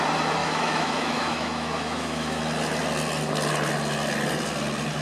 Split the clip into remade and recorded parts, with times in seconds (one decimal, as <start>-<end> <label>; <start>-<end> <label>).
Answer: 0.0-0.4 recorded; 0.4-2.4 remade; 2.4-5.0 recorded